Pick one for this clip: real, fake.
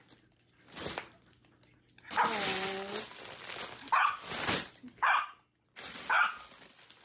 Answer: real